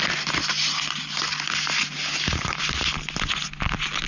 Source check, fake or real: real